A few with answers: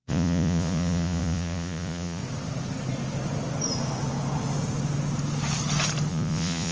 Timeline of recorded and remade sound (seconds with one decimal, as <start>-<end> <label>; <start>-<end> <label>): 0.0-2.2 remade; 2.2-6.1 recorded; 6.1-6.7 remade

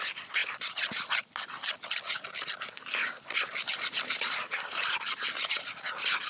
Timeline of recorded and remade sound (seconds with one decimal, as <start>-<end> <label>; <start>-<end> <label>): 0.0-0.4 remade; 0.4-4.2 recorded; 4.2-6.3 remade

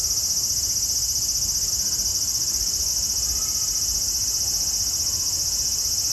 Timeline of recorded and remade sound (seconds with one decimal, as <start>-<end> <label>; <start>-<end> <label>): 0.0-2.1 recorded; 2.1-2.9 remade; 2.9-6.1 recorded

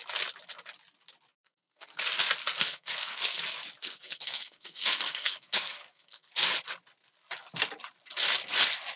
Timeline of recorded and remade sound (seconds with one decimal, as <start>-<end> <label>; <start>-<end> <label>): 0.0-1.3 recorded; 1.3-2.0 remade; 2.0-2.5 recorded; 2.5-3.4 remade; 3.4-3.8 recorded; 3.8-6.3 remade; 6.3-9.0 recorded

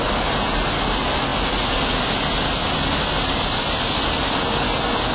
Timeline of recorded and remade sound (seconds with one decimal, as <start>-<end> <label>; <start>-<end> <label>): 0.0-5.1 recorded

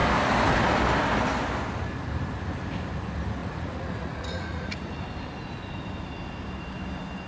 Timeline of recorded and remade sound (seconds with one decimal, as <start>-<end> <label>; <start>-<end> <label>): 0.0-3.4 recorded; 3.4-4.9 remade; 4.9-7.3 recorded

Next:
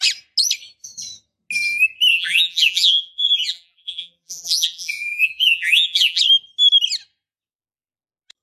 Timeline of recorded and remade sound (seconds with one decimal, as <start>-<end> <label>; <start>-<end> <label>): 0.0-2.1 recorded; 2.1-6.2 remade; 6.2-8.4 recorded